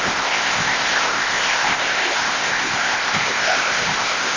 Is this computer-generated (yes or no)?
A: yes